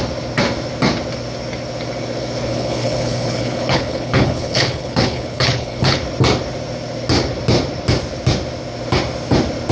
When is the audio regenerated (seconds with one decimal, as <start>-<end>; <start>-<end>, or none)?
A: 2.5-6.0